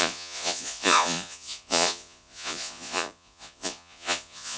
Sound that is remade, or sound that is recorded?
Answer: remade